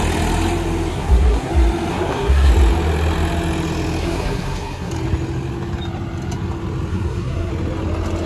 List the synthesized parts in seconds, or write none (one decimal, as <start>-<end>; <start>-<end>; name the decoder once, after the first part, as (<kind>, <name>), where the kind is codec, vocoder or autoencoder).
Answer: 0.9-1.5 (codec, SNAC); 1.9-2.5; 4.0-4.9; 6.9-7.5

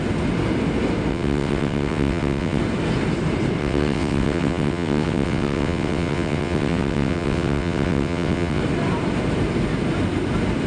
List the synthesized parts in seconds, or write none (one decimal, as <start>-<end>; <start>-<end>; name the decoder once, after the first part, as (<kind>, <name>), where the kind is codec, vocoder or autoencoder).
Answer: 1.1-2.6 (vocoder, WaveNeXt); 3.6-8.6

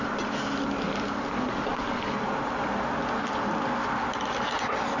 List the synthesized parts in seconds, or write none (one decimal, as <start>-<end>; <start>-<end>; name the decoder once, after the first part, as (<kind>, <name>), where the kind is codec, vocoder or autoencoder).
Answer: none

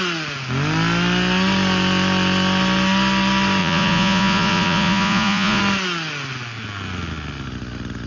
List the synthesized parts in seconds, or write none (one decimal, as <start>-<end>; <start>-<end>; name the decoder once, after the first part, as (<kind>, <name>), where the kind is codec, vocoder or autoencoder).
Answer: 3.6-5.6 (vocoder, Vocos)